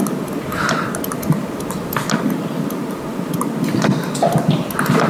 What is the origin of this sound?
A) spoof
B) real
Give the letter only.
B